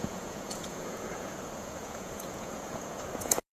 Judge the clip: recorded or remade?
remade